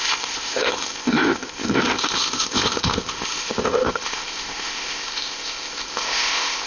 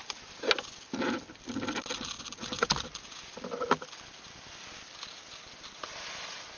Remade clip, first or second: first